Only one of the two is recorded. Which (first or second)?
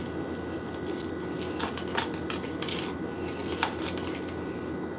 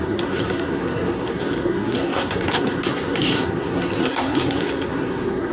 first